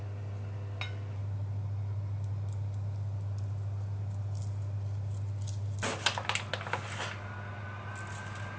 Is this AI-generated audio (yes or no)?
no